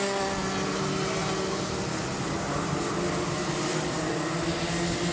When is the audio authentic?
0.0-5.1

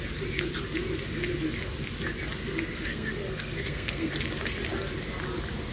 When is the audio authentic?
0.0-2.7; 4.1-5.7